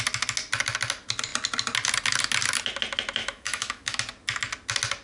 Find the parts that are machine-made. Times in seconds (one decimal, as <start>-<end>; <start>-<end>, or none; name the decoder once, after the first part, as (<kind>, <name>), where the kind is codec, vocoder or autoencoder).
3.2-4.0 (autoencoder, DAC-VAE)

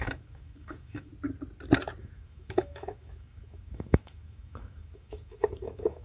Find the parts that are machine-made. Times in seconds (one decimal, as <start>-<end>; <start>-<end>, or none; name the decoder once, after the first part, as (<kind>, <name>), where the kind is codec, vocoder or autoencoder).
0.0-1.1 (autoencoder, DAC-VAE); 2.0-6.0